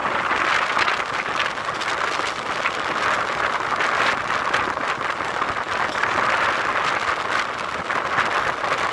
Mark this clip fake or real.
real